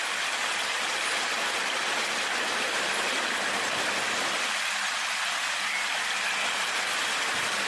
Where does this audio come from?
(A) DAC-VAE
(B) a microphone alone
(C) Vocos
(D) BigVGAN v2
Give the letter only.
B